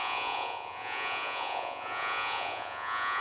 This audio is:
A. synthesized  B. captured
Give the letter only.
A